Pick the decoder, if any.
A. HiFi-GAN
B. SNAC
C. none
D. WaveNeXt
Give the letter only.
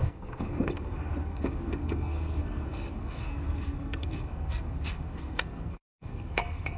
B